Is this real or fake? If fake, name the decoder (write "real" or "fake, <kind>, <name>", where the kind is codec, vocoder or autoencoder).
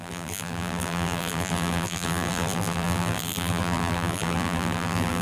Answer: fake, vocoder, BigVGAN v2